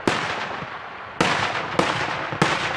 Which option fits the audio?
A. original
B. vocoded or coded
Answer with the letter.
A